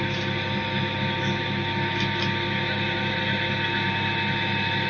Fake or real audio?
real